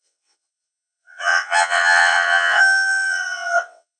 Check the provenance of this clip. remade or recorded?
remade